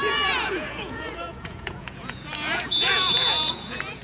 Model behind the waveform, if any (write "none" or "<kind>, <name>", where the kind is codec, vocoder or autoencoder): vocoder, Vocos